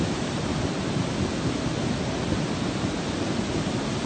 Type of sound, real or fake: real